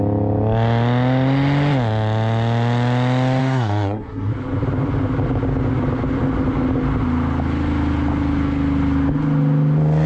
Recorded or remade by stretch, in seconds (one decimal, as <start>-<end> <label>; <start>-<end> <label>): 0.0-3.4 recorded; 3.4-4.3 remade; 4.3-10.1 recorded